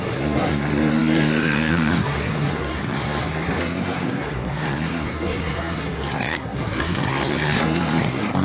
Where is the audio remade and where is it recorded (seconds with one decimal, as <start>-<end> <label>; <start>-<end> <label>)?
0.0-8.4 remade